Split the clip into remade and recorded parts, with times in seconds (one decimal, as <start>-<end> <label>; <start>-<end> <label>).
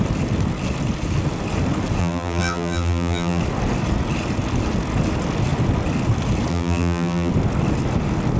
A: 0.0-2.0 recorded; 2.0-3.4 remade; 3.4-6.5 recorded; 6.5-7.3 remade; 7.3-8.4 recorded